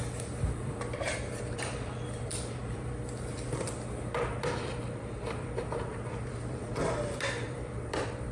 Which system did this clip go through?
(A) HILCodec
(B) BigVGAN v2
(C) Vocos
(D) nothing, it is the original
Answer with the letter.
B